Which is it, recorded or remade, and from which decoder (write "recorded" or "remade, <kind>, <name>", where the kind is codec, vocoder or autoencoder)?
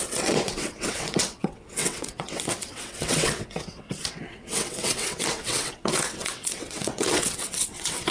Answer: remade, vocoder, WaveNeXt